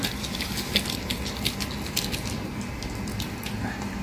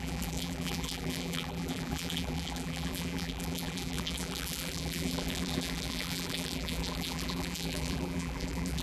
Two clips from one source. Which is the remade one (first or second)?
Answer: second